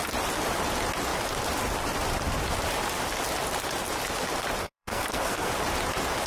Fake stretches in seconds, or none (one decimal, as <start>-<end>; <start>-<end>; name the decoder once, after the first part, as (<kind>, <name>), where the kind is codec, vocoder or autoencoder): 4.6-5.5 (codec, SNAC)